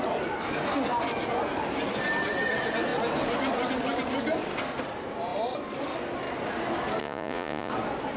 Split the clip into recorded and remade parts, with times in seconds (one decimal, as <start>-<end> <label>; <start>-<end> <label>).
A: 0.0-7.0 recorded; 7.0-7.7 remade; 7.7-8.2 recorded